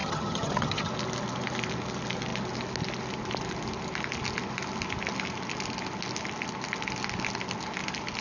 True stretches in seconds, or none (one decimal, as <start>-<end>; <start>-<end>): 0.9-8.2